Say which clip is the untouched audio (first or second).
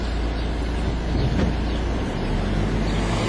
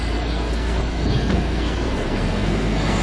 first